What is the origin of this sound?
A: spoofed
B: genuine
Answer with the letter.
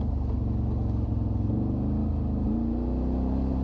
B